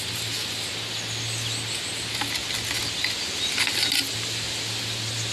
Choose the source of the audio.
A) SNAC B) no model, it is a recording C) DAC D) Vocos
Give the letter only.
B